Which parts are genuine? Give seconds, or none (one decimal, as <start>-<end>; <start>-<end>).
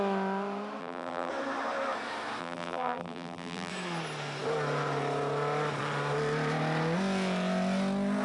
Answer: 0.0-0.8; 1.3-2.4; 3.7-8.2